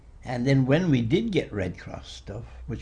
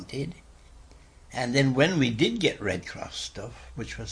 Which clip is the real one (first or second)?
first